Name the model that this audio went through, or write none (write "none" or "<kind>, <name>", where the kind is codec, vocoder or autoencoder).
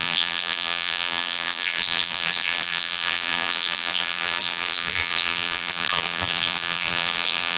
vocoder, BigVGAN v2